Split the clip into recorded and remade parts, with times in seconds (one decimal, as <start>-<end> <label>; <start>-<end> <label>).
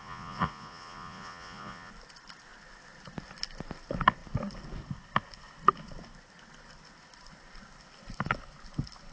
0.0-1.9 remade; 1.9-9.1 recorded